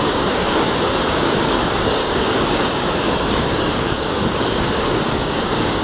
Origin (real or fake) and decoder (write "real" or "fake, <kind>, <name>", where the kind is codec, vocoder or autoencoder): fake, codec, DAC